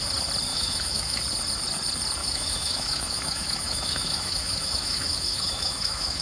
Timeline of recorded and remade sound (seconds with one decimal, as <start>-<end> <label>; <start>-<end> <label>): 0.0-0.5 recorded; 0.5-1.2 remade; 1.2-2.2 recorded; 2.2-6.2 remade